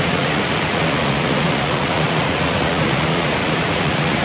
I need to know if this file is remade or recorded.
remade